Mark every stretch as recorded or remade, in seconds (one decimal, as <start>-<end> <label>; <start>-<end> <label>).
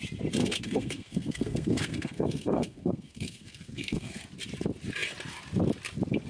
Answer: 0.0-0.4 recorded; 0.4-4.2 remade; 4.2-6.3 recorded